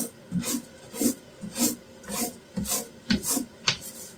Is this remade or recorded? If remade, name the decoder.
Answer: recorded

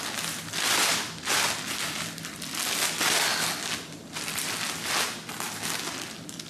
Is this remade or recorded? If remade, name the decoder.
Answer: recorded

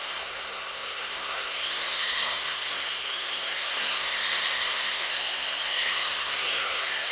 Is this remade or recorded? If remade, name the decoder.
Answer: remade, codec, SNAC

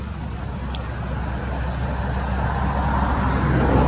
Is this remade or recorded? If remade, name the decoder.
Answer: recorded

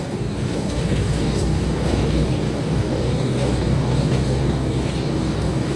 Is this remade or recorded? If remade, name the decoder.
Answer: remade, codec, DAC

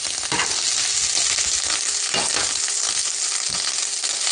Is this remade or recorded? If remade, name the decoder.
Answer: recorded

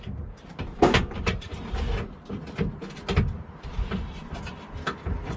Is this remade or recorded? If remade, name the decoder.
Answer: recorded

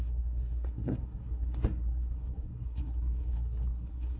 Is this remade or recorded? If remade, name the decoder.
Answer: remade, codec, SNAC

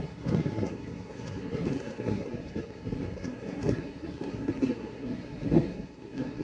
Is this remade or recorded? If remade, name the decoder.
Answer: remade, codec, SNAC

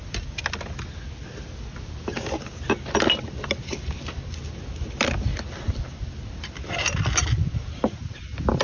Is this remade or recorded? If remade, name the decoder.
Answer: recorded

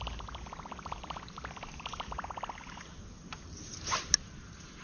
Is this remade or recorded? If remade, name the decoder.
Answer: recorded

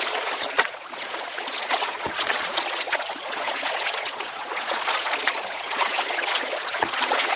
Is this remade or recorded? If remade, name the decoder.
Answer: remade, vocoder, Vocos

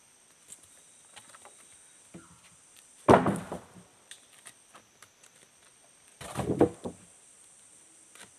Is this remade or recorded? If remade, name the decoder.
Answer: recorded